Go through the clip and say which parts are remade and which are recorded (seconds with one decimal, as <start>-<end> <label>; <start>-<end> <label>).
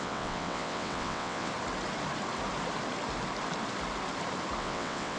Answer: 0.0-1.5 remade; 1.5-4.6 recorded; 4.6-5.2 remade